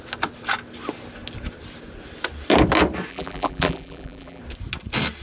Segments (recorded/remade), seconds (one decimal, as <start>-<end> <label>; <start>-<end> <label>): 0.0-3.1 recorded; 3.1-4.4 remade; 4.4-5.2 recorded

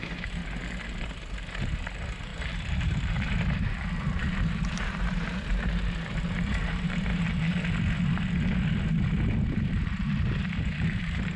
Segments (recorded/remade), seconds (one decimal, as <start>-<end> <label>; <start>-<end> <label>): 0.0-0.4 remade; 0.4-1.4 recorded; 1.4-7.1 remade; 7.1-9.6 recorded; 9.6-11.4 remade

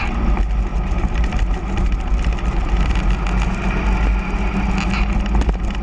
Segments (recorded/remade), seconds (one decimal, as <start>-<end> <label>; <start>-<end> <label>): 0.0-0.7 recorded; 0.7-2.1 remade; 2.1-5.8 recorded